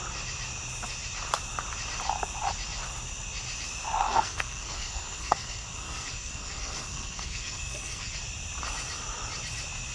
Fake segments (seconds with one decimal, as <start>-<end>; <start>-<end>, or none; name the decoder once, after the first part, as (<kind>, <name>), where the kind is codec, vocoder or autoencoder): 4.0-8.1 (codec, SNAC)